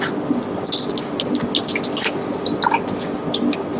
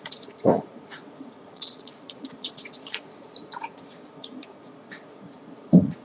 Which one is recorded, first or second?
first